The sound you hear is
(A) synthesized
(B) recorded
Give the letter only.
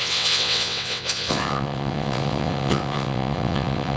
A